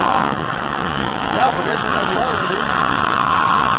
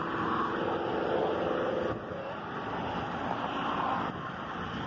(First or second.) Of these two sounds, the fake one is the first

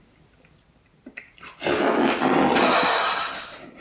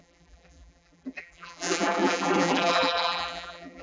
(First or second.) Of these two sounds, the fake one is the second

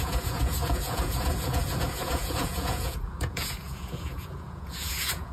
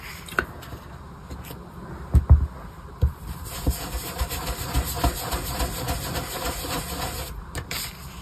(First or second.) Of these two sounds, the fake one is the first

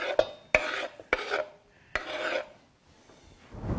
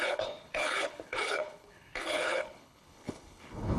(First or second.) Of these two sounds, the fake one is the second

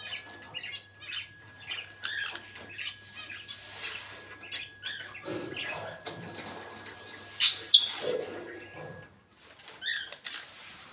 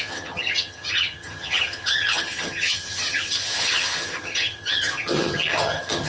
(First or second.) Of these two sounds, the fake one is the second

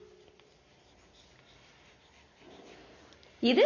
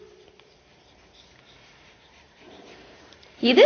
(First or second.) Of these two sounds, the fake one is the second